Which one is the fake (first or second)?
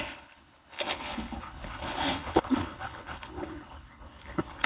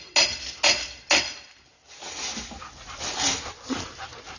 first